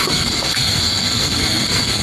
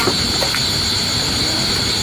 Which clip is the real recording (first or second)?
second